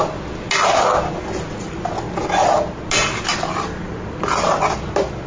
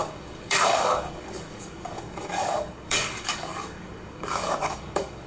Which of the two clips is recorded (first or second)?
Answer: first